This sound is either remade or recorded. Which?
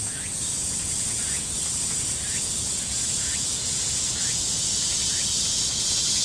remade